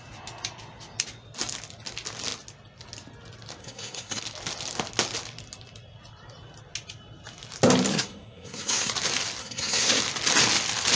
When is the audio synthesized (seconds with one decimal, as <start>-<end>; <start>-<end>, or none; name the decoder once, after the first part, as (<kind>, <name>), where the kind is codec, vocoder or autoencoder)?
3.6-4.2 (codec, SNAC); 7.9-8.9; 9.4-10.0